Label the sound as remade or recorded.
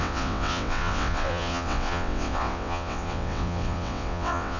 remade